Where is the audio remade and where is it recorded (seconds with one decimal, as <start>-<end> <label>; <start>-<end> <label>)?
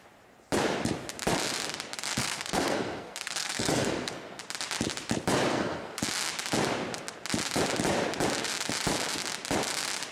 0.0-2.2 recorded; 2.2-4.4 remade; 4.4-5.5 recorded; 5.5-6.0 remade; 6.0-10.1 recorded